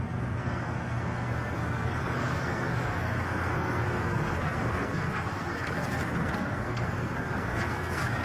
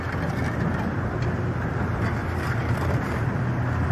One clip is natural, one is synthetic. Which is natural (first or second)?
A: second